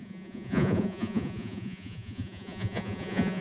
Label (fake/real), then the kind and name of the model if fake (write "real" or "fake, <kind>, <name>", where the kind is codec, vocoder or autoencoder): fake, vocoder, Vocos